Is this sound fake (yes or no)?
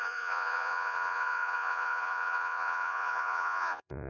yes